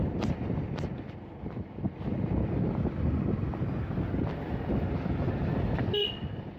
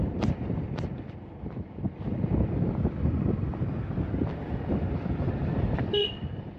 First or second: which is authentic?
first